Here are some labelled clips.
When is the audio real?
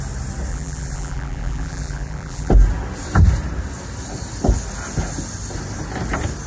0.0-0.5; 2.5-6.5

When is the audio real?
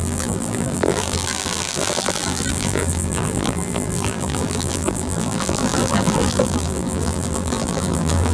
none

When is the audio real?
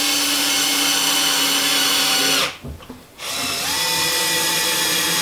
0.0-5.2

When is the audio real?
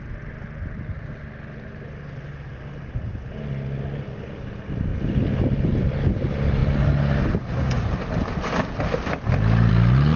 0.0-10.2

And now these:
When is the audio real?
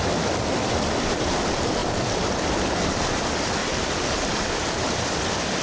0.0-1.8; 3.2-3.6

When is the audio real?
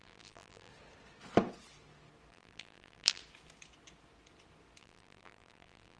0.7-2.3; 3.2-4.8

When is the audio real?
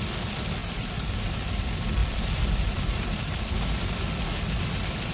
0.0-0.6; 1.3-2.0; 3.5-5.1